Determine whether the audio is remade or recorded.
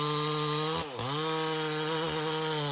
recorded